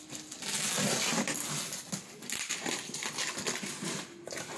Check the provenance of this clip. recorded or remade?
recorded